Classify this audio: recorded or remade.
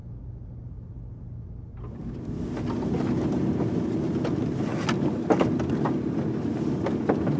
recorded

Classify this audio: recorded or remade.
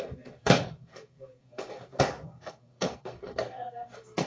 remade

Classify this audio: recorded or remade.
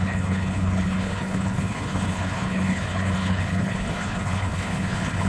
remade